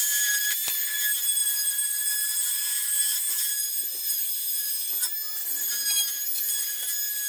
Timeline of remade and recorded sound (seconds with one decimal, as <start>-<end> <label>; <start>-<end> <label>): 0.0-1.4 recorded; 1.4-4.9 remade; 4.9-7.3 recorded